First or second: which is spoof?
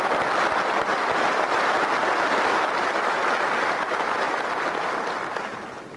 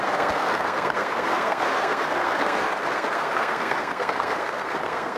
second